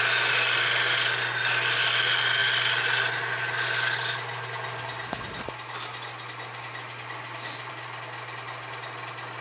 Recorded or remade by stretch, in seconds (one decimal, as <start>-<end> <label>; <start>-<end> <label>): 0.0-9.4 recorded